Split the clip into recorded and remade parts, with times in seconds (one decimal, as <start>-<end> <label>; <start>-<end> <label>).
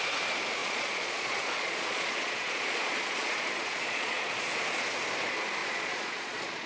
0.0-0.6 recorded; 0.6-4.5 remade; 4.5-5.6 recorded; 5.6-6.7 remade